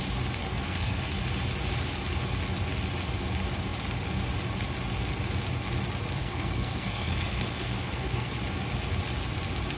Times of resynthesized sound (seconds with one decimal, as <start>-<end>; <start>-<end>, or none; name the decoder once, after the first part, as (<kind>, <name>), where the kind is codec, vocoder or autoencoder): 0.4-1.0 (codec, SNAC); 6.2-8.4